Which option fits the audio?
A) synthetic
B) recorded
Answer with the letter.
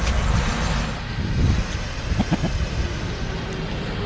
B